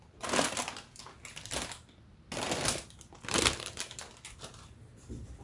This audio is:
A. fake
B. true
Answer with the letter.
B